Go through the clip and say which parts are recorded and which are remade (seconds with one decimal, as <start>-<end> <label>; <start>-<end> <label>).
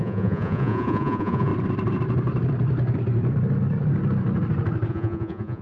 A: 0.0-1.5 remade; 1.5-4.9 recorded; 4.9-5.6 remade